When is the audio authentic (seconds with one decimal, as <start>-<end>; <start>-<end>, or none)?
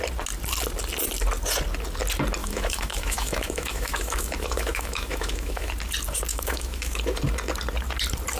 0.0-2.4; 5.7-6.3; 7.0-8.4